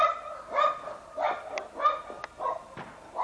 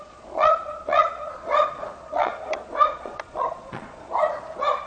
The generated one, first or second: second